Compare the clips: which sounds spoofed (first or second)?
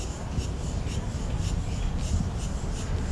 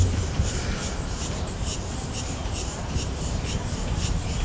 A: second